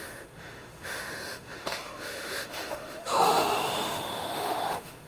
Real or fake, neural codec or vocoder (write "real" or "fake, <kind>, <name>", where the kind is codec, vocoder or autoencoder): fake, autoencoder, DAC-VAE